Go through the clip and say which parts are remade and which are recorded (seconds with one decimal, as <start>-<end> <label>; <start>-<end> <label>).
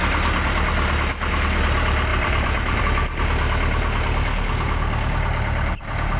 0.0-2.1 recorded; 2.1-2.8 remade; 2.8-6.2 recorded